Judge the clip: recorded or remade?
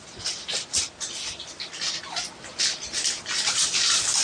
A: recorded